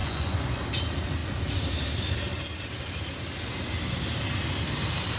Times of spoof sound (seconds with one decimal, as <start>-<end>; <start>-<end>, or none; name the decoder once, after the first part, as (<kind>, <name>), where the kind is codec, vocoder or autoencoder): 0.0-0.6 (vocoder, Vocos)